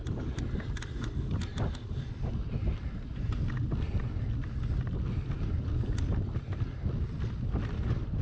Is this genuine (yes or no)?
yes